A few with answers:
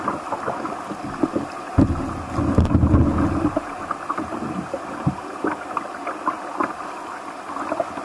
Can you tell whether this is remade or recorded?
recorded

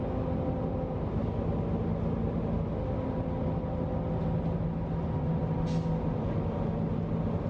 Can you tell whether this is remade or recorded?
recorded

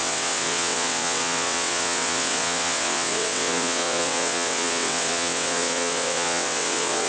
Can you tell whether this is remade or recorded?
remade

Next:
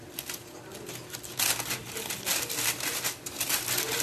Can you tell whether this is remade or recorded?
remade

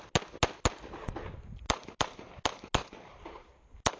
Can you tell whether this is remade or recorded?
recorded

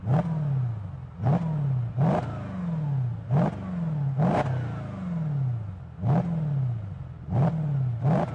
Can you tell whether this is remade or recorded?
recorded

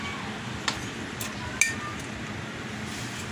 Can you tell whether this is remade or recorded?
recorded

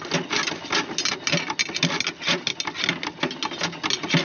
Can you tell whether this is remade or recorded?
recorded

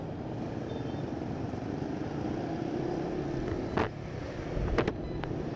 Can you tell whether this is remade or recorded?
recorded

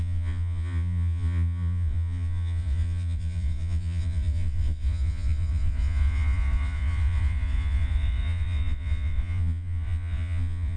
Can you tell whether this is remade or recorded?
remade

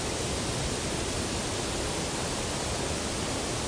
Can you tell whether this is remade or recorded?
recorded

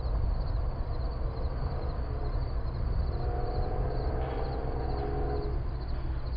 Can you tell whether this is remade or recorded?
recorded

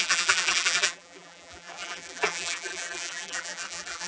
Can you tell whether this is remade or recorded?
remade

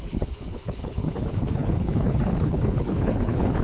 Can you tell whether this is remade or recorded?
remade